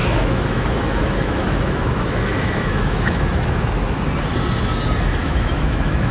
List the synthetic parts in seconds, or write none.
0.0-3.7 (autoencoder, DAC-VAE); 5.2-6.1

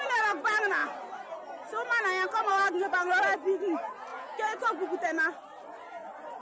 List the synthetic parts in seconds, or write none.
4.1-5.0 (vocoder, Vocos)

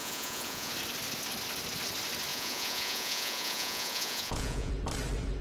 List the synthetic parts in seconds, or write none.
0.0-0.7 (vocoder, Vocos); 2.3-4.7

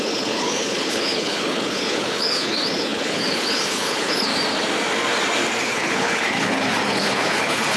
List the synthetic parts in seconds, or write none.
0.0-4.3 (codec, HILCodec); 5.6-7.8

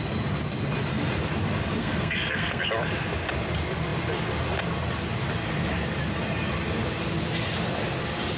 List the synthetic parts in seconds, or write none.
1.8-2.6 (codec, SNAC)

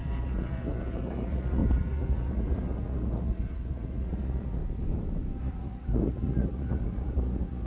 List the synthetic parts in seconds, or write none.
0.0-4.6 (vocoder, Vocos); 5.4-7.7

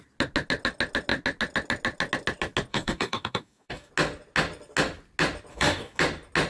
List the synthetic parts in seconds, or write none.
2.7-3.9 (codec, DAC); 5.5-6.0